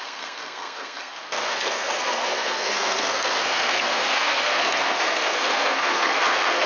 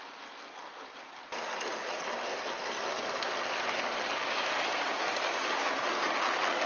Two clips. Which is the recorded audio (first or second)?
second